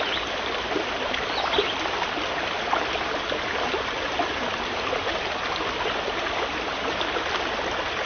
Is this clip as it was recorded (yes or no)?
yes